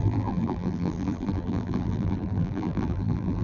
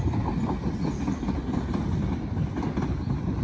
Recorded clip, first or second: second